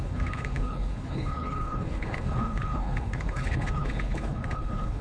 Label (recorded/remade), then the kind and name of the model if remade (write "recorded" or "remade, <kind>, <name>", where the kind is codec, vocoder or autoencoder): remade, codec, HILCodec